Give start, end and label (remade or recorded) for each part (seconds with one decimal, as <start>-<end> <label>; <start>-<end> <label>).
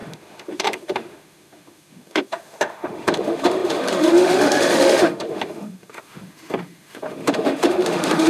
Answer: 0.0-8.3 remade